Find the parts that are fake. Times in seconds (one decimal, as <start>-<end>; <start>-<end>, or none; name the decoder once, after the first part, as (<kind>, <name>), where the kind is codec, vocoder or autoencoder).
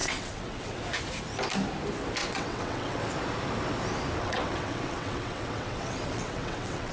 0.0-0.8 (vocoder, WaveNeXt); 2.2-3.0; 4.2-6.9